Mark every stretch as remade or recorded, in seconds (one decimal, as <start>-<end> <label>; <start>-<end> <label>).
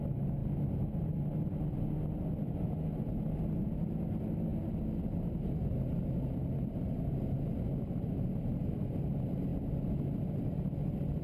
0.0-11.2 recorded